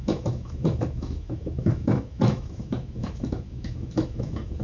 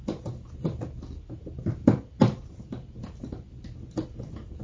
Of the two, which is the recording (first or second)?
second